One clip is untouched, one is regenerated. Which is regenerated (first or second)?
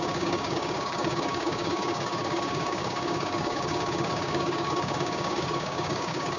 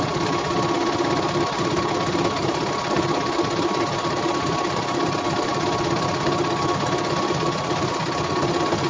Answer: first